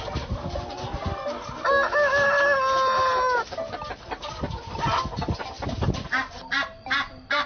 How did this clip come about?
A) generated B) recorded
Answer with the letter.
B